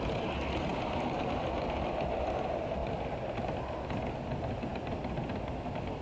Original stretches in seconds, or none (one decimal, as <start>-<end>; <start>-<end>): 0.0-6.0